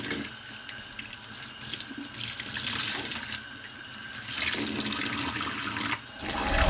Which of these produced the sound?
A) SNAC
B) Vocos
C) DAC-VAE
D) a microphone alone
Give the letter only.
D